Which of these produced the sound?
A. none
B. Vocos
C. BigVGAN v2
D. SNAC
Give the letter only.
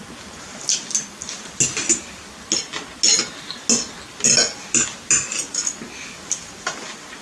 A